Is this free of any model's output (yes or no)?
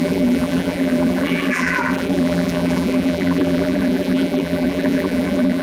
no